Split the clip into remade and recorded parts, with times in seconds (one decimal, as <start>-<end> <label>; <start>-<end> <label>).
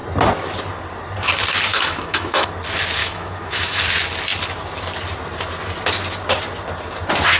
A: 0.0-1.7 recorded; 1.7-2.5 remade; 2.5-3.0 recorded; 3.0-3.8 remade; 3.8-7.4 recorded